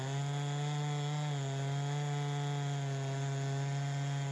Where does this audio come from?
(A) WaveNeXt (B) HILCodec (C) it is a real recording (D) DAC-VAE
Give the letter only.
C